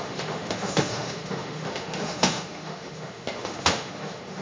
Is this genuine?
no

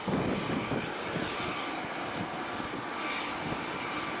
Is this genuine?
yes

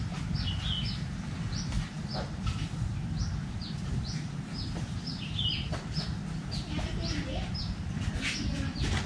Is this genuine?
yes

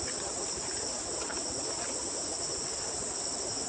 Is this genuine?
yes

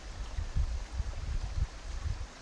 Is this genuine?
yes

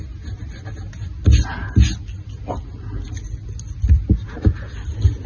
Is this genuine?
yes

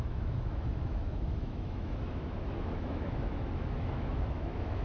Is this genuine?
no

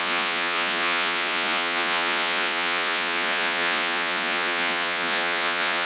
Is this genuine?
no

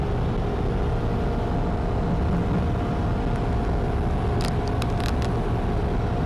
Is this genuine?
yes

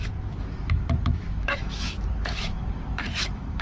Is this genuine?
no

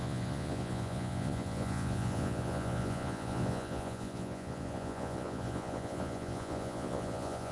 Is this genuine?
no